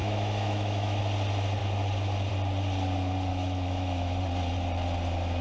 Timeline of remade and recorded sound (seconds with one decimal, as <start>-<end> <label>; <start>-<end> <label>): 0.0-1.0 remade; 1.0-3.3 recorded; 3.3-4.2 remade; 4.2-5.4 recorded